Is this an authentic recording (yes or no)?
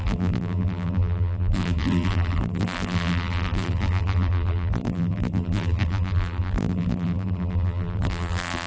no